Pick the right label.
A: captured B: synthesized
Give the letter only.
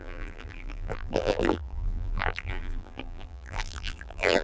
B